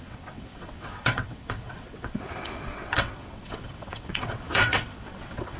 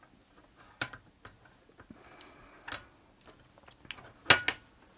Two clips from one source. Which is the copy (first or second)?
first